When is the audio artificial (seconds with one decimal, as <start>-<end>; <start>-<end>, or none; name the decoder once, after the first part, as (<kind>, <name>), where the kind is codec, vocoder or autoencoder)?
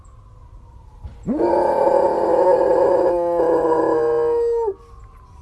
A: 0.4-1.5 (vocoder, BigVGAN v2)